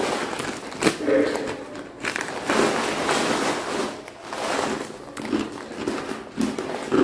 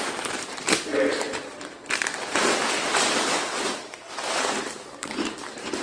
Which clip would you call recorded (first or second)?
first